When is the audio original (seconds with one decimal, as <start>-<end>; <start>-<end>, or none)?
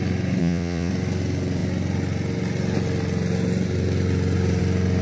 0.0-0.4; 0.9-5.0